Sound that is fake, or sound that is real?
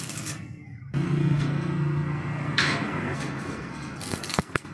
fake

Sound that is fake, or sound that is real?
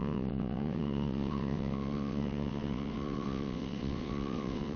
fake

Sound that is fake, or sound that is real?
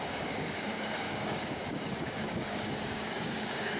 fake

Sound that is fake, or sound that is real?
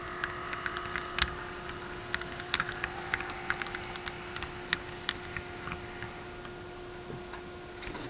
real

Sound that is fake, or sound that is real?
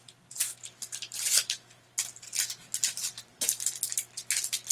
real